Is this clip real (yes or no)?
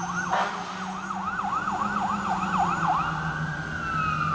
yes